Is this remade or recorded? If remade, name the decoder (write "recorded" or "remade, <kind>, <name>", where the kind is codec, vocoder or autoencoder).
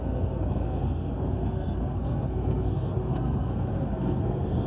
remade, codec, SNAC